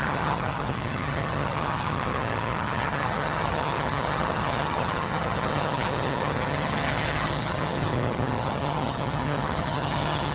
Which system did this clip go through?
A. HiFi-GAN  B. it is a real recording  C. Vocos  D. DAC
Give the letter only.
A